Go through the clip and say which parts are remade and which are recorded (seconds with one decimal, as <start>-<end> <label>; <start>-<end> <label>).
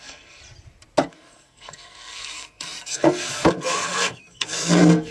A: 0.0-0.4 remade; 0.4-1.1 recorded; 1.1-5.1 remade